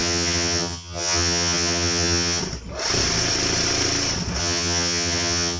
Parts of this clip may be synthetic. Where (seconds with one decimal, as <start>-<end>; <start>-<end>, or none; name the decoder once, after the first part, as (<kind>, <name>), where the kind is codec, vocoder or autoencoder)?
0.0-2.4 (vocoder, HiFi-GAN); 4.4-5.6